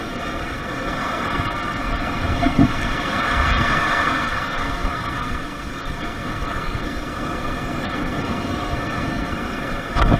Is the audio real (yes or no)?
no